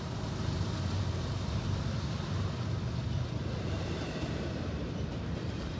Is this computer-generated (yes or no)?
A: no